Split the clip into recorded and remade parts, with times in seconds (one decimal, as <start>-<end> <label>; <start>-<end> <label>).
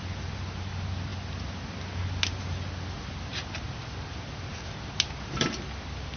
0.0-6.2 recorded